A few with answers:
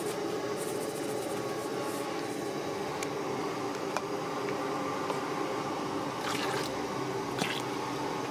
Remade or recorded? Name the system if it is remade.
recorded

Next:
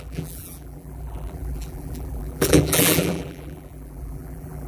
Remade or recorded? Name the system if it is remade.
remade, vocoder, BigVGAN v2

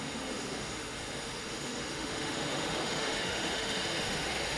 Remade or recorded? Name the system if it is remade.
remade, autoencoder, DAC-VAE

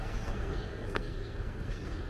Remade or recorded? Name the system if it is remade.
remade, codec, SNAC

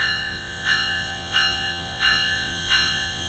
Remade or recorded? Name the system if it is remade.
remade, vocoder, WaveNeXt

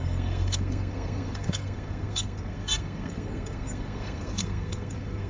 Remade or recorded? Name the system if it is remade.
remade, codec, SNAC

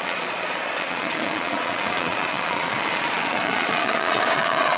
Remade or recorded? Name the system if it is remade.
remade, vocoder, Vocos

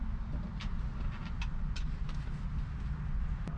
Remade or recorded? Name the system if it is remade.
recorded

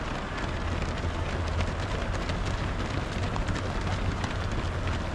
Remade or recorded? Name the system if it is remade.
recorded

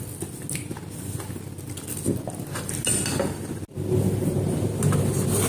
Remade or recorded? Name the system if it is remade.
recorded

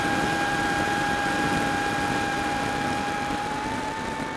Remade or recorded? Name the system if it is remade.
recorded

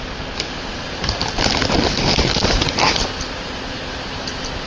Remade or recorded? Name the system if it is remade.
recorded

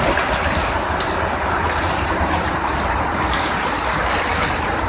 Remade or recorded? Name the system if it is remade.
recorded